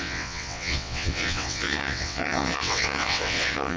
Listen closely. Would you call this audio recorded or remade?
remade